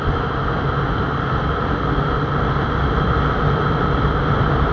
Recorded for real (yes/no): yes